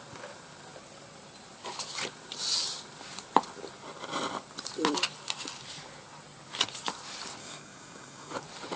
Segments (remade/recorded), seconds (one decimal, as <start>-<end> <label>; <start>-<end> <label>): 0.0-7.4 recorded; 7.4-8.4 remade; 8.4-8.8 recorded